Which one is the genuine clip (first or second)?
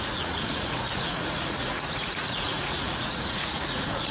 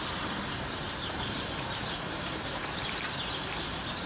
second